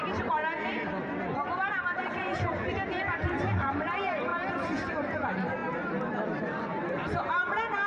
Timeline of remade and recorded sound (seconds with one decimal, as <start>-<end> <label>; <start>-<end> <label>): 0.0-0.4 remade; 0.4-1.7 recorded; 1.7-4.3 remade; 4.3-4.9 recorded; 4.9-5.6 remade; 5.6-6.2 recorded; 6.2-7.9 remade